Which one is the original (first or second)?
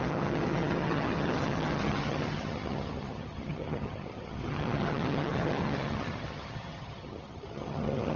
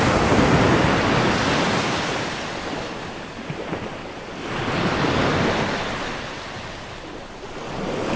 second